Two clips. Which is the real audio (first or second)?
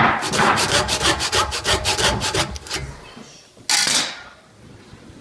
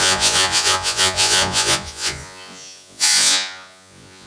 first